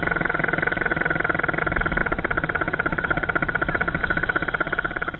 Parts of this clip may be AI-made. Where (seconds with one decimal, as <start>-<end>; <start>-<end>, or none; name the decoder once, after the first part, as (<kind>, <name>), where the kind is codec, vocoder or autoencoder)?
0.0-0.9 (vocoder, BigVGAN v2); 1.6-5.2